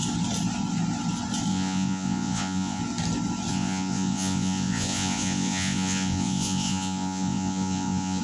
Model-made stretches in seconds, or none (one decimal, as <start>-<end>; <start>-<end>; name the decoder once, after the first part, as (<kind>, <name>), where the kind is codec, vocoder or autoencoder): 1.5-2.8 (vocoder, Vocos); 3.5-8.2